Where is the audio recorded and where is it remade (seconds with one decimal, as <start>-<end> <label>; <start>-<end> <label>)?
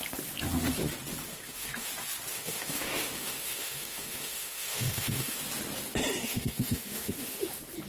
0.0-1.3 recorded; 1.3-1.9 remade; 1.9-2.3 recorded; 2.3-5.4 remade; 5.4-6.2 recorded; 6.2-7.5 remade; 7.5-7.9 recorded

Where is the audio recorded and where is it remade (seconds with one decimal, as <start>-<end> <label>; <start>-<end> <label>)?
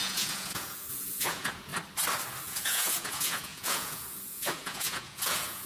0.0-1.7 remade; 1.7-2.4 recorded; 2.4-5.7 remade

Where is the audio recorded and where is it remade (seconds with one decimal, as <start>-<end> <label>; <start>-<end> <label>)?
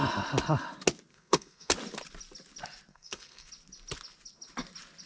0.0-1.1 recorded; 1.1-1.7 remade; 1.7-2.9 recorded; 2.9-3.5 remade; 3.5-5.1 recorded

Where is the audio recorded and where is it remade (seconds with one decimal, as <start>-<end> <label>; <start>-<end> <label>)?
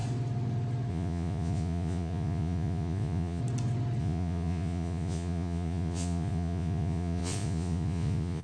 0.0-0.9 recorded; 0.9-3.4 remade; 3.4-4.0 recorded; 4.0-8.4 remade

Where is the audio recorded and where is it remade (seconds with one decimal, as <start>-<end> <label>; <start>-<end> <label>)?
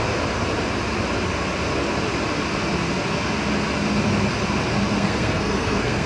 0.0-4.9 recorded; 4.9-6.1 remade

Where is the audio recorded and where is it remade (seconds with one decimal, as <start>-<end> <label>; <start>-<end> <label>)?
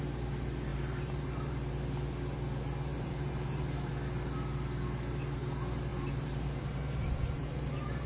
0.0-0.7 recorded; 0.7-1.7 remade; 1.7-2.9 recorded; 2.9-3.9 remade; 3.9-5.9 recorded; 5.9-8.1 remade